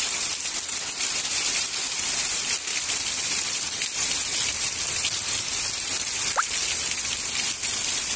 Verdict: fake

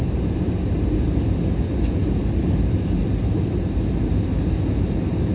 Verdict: real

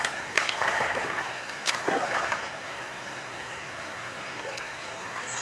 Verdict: fake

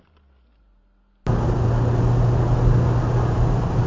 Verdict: real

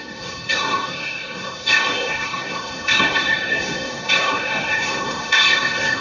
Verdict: fake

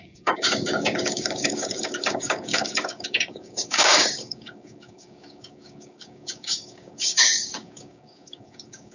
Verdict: fake